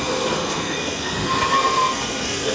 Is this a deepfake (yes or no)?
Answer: yes